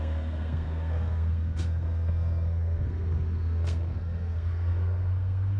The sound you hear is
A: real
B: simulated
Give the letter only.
B